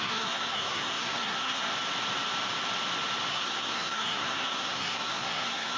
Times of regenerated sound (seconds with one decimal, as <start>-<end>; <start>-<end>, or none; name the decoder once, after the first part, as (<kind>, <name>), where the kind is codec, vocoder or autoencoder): 0.0-1.7 (codec, SNAC); 3.3-5.8